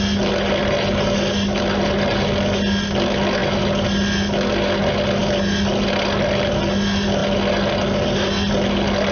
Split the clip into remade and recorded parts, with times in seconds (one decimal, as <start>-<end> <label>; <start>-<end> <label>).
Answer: 0.0-9.1 recorded